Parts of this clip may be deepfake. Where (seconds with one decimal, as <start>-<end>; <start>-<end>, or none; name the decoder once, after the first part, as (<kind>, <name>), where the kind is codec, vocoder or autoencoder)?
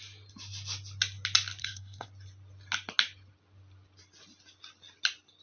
1.6-2.1 (codec, SNAC)